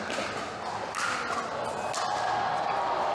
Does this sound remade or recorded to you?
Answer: recorded